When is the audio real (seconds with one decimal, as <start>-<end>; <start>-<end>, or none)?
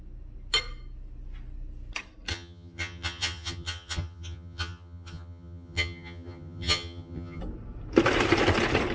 0.0-2.3; 7.4-8.9